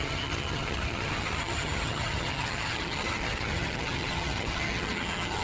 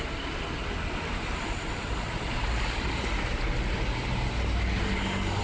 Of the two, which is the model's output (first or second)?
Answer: first